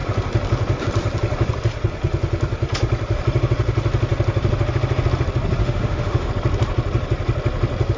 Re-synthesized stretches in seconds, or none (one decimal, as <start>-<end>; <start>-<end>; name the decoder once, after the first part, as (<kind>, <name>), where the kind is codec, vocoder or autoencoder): 5.6-6.3 (autoencoder, DAC-VAE)